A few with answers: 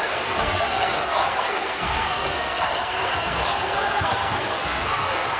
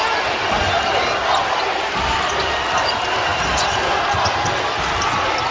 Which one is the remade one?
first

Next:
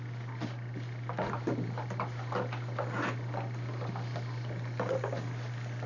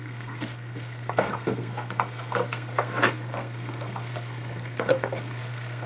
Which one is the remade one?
second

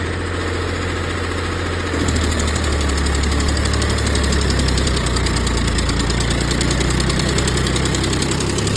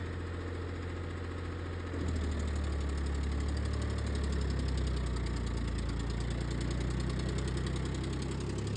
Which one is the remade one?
first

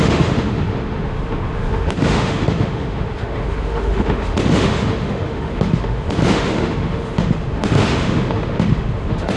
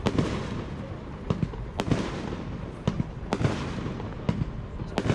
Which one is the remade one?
first